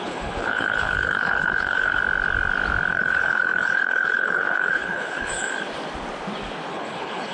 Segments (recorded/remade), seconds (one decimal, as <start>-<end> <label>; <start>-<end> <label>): 0.0-2.0 remade; 2.0-2.9 recorded; 2.9-5.5 remade; 5.5-6.7 recorded; 6.7-7.3 remade